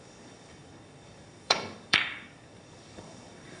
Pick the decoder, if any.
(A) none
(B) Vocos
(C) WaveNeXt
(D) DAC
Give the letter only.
D